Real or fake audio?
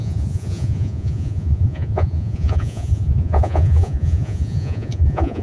fake